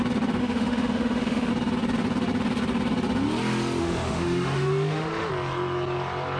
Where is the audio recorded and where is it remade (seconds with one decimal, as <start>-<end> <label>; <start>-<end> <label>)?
0.0-0.4 recorded; 0.4-1.5 remade; 1.5-3.8 recorded; 3.8-5.3 remade; 5.3-6.4 recorded